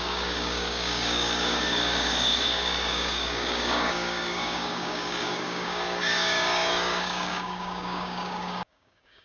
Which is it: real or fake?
fake